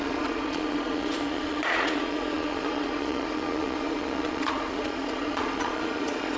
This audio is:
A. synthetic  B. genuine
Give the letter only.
A